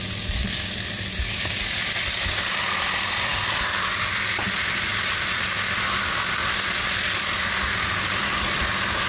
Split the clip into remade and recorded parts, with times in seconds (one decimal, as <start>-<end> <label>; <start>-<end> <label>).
0.0-9.1 recorded